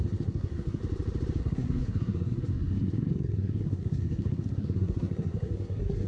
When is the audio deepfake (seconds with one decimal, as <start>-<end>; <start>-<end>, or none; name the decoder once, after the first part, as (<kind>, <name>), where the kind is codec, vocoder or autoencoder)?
0.0-0.8 (codec, SNAC); 1.4-6.1